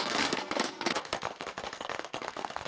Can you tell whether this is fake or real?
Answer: fake